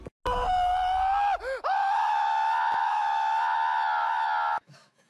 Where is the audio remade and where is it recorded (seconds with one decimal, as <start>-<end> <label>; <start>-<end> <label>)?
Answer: 0.0-1.8 recorded; 1.8-5.1 remade